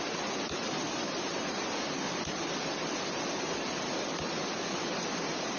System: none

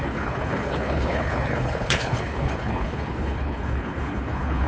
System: codec, HILCodec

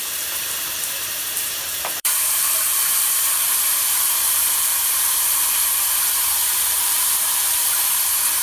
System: vocoder, BigVGAN v2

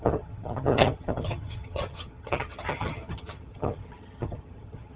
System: vocoder, HiFi-GAN